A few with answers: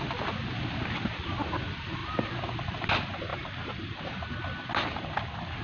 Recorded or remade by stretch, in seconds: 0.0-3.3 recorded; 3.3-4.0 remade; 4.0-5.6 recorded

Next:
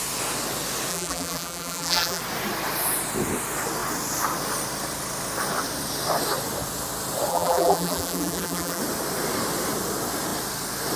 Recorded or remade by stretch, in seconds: 0.0-0.9 recorded; 0.9-2.2 remade; 2.2-7.3 recorded; 7.3-8.8 remade; 8.8-11.0 recorded

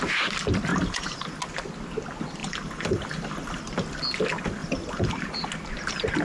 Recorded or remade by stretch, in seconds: 0.0-0.7 recorded; 0.7-1.4 remade; 1.4-2.4 recorded; 2.4-3.6 remade; 3.6-4.6 recorded; 4.6-5.5 remade; 5.5-6.2 recorded

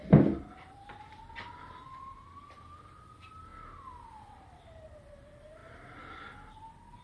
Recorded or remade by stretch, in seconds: 0.0-3.5 recorded; 3.5-4.6 remade; 4.6-7.0 recorded

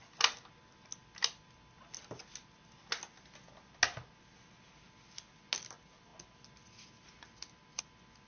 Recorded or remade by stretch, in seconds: 0.0-8.3 recorded

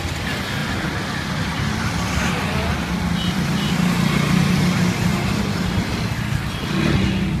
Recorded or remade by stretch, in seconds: 0.0-0.6 recorded; 0.6-3.7 remade; 3.7-7.4 recorded